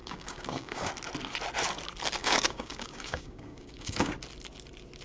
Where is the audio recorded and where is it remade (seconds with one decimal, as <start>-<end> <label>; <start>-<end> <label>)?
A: 0.0-0.9 remade; 0.9-2.2 recorded; 2.2-4.1 remade; 4.1-5.0 recorded